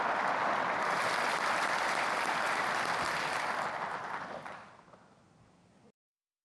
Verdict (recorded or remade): recorded